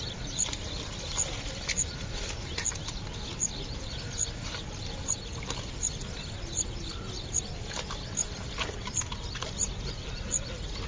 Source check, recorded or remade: recorded